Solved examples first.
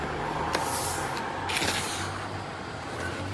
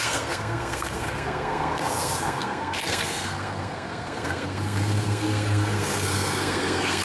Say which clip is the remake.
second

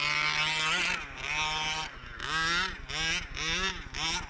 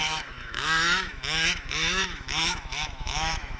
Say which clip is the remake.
second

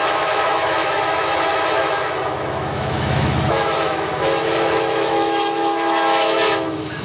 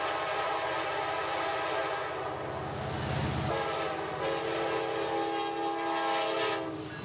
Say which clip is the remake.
first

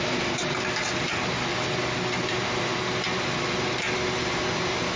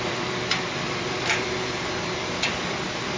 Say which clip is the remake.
second